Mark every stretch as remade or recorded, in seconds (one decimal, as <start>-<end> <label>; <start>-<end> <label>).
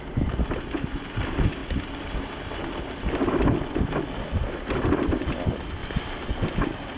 0.0-5.8 recorded; 5.8-6.3 remade; 6.3-7.0 recorded